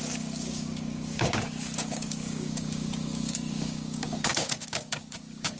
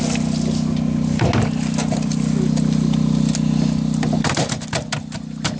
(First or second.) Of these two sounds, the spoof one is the first